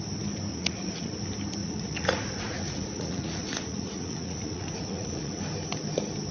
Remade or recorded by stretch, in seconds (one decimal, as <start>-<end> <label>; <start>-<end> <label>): 0.0-0.5 recorded; 0.5-1.1 remade; 1.1-1.6 recorded; 1.6-5.4 remade; 5.4-6.3 recorded